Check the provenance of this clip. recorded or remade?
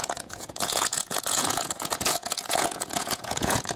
remade